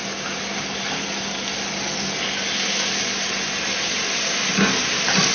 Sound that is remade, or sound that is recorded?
recorded